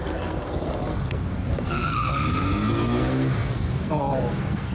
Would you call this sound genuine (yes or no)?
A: no